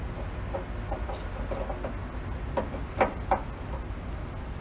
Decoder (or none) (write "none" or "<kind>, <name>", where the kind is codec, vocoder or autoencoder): none